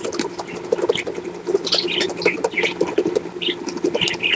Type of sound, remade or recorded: recorded